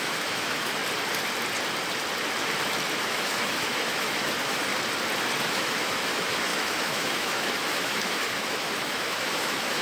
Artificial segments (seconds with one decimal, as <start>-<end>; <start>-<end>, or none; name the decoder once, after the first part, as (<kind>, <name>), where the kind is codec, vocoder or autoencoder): 0.0-0.8 (autoencoder, DAC-VAE); 3.0-4.7; 5.4-9.8